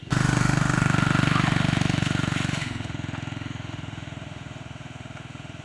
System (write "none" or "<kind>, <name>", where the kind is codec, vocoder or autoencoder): autoencoder, DAC-VAE